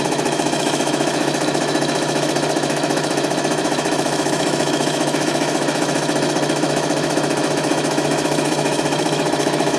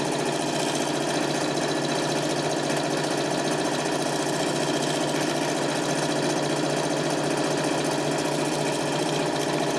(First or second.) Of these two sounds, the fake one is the first